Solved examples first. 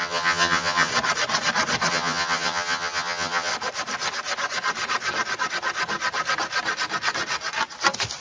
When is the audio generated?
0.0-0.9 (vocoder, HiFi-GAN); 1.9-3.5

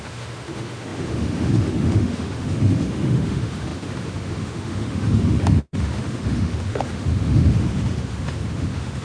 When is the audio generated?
0.0-9.0 (autoencoder, DAC-VAE)

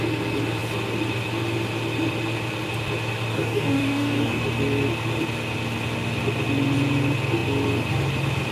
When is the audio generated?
3.3-4.4 (codec, DAC)

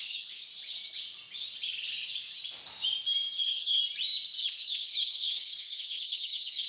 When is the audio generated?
0.0-0.4 (codec, HILCodec); 3.4-3.8; 4.5-6.7

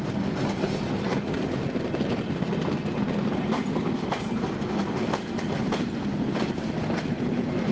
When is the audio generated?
none

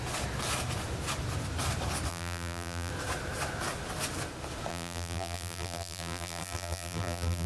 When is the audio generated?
2.1-2.9 (vocoder, BigVGAN v2); 4.7-7.5